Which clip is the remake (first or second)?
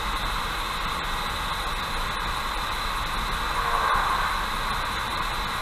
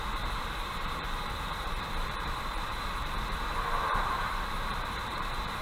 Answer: second